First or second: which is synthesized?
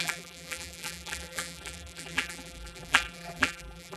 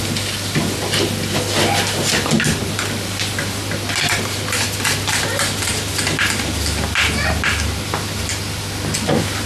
first